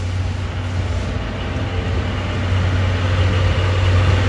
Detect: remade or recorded recorded